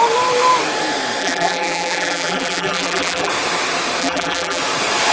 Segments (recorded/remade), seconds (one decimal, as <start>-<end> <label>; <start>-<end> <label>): 0.0-1.2 recorded; 1.2-3.3 remade; 3.3-4.0 recorded; 4.0-4.6 remade; 4.6-5.1 recorded